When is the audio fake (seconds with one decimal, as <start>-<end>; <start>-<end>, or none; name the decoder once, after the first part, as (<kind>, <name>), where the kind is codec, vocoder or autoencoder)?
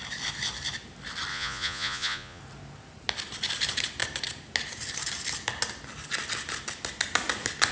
1.3-2.4 (vocoder, Vocos)